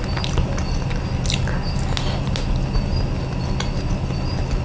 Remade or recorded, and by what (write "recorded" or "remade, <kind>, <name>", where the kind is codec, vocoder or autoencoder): recorded